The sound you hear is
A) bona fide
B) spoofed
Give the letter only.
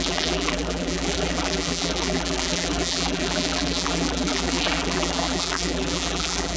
B